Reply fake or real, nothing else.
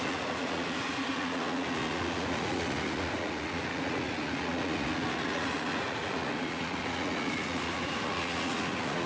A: fake